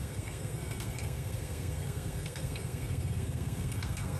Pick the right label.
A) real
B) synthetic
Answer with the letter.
B